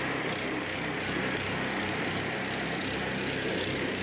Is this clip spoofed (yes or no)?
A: no